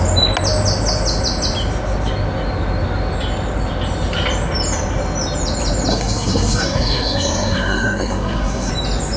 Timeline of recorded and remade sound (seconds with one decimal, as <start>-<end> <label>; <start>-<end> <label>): 0.0-5.9 recorded; 5.9-8.7 remade; 8.7-9.2 recorded